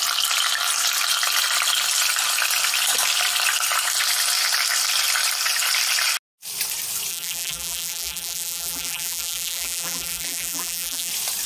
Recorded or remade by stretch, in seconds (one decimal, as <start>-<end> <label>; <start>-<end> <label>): 0.0-7.1 recorded; 7.1-11.1 remade; 11.1-11.5 recorded